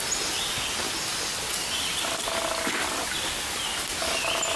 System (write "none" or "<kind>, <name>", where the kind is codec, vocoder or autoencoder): none